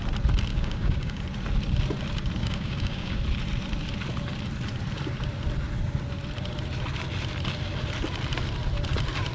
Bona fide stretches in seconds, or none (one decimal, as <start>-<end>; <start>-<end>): 0.0-0.5; 1.2-2.4; 3.2-9.3